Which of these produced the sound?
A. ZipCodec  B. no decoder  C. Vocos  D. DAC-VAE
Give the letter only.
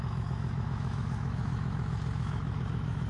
D